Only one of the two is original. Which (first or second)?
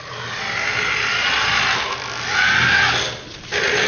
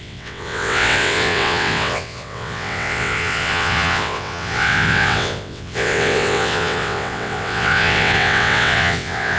first